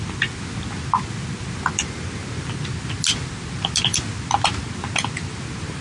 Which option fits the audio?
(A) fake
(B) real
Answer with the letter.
B